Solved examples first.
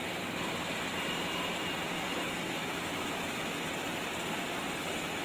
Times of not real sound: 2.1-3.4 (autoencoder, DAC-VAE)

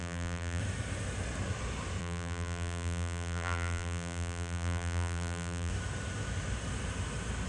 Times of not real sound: 0.0-0.6 (vocoder, BigVGAN v2); 2.0-5.7

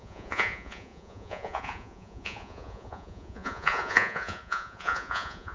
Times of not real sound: 0.0-5.5 (vocoder, Vocos)

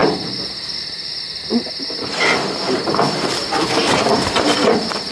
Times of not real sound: 0.0-5.1 (vocoder, BigVGAN v2)

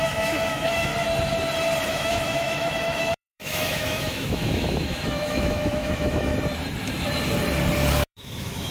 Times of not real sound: 0.0-0.9 (autoencoder, DAC-VAE); 1.9-6.3; 7.9-8.7

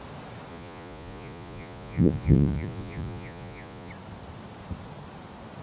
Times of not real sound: 0.5-3.9 (vocoder, Vocos)

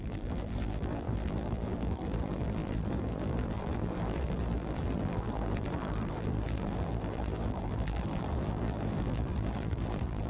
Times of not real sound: 0.0-10.3 (vocoder, BigVGAN v2)